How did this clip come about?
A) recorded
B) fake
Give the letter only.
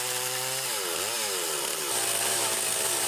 A